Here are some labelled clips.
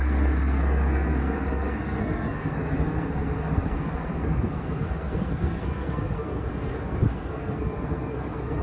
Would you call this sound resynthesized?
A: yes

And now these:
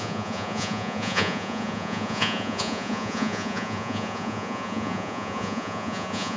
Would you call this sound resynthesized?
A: yes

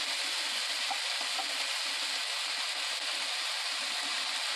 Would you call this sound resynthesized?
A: no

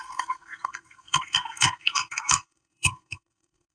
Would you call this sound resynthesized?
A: yes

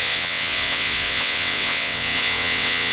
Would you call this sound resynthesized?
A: yes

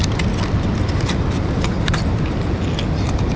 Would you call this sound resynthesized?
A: no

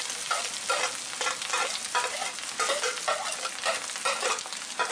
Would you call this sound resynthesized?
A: no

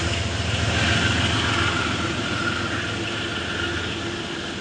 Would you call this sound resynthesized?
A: no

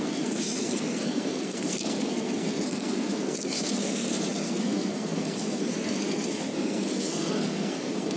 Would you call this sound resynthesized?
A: yes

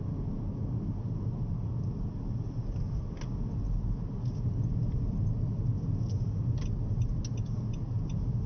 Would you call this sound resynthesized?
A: no